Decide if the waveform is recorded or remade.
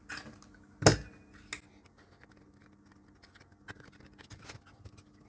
recorded